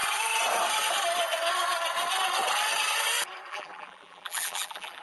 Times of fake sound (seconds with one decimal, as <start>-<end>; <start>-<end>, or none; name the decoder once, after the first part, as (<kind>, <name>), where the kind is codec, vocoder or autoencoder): 3.5-5.0 (vocoder, BigVGAN v2)